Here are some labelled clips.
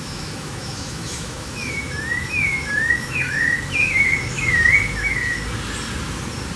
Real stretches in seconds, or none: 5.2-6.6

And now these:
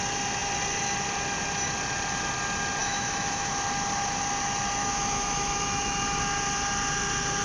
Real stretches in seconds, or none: 0.0-2.8; 3.5-4.8; 6.0-7.4